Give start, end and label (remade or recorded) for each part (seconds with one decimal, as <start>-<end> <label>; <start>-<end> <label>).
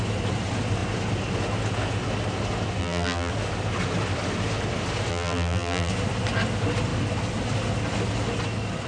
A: 0.0-2.8 recorded; 2.8-3.3 remade; 3.3-5.1 recorded; 5.1-5.9 remade; 5.9-8.9 recorded